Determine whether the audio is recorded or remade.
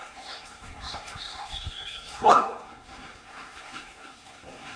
remade